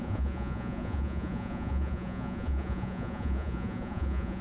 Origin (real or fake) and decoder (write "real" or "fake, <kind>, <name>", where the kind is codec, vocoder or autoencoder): fake, vocoder, Vocos